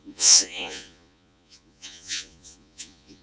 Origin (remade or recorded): remade